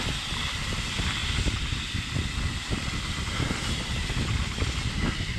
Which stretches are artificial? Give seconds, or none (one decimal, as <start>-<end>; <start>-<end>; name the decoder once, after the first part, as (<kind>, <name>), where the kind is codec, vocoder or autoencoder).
none